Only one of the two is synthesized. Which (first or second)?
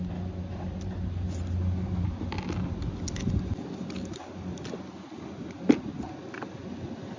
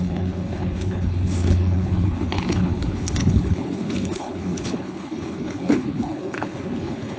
second